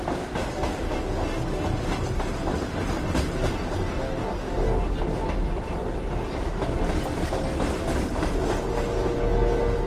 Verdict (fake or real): real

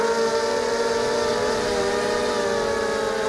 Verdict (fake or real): real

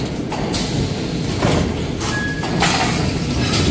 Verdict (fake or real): real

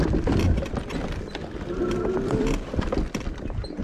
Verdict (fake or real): real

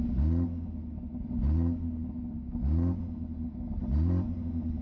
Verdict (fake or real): real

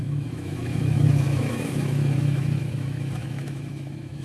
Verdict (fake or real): fake